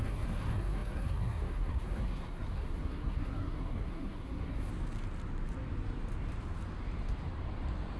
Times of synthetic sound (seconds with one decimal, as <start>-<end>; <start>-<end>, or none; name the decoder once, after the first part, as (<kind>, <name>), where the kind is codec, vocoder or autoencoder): 0.0-4.7 (codec, SNAC)